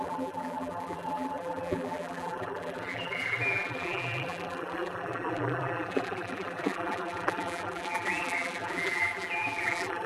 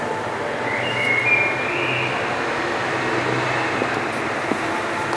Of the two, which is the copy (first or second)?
first